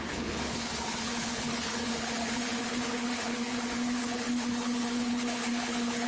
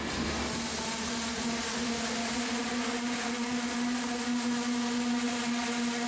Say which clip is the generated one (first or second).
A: first